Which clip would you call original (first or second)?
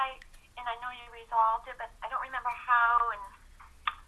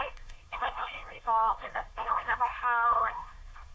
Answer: first